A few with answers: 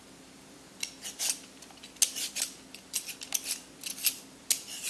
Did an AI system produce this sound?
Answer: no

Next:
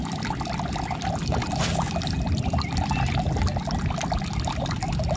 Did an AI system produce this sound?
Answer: no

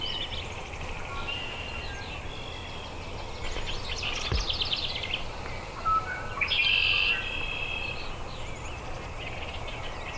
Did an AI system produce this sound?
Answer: no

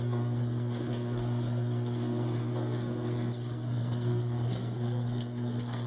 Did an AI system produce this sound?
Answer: yes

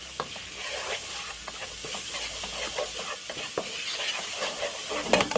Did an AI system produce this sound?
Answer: no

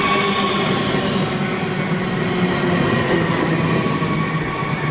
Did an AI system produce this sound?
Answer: no